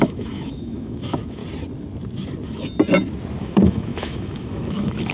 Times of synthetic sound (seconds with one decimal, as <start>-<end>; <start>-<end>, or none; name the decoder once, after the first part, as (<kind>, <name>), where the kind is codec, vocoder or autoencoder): 0.0-1.4 (autoencoder, DAC-VAE); 3.4-5.1